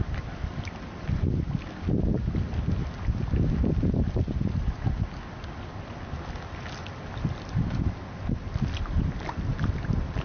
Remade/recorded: recorded